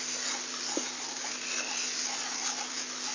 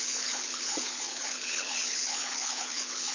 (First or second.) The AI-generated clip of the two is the second